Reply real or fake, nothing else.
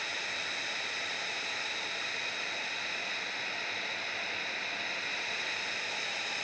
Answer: real